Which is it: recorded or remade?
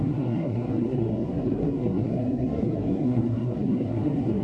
remade